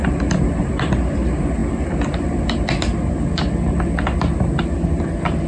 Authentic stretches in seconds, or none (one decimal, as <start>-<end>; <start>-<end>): 0.0-5.5